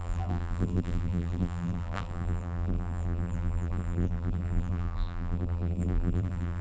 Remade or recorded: remade